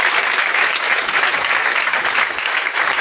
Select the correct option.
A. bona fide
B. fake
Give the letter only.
B